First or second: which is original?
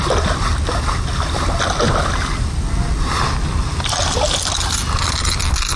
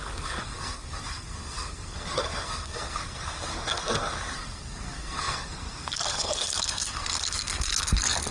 first